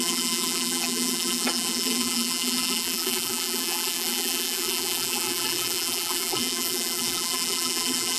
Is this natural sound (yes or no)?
no